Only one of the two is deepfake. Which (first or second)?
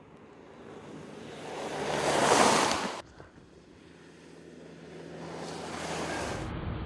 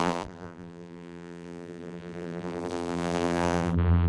second